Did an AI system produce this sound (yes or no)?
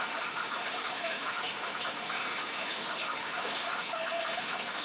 yes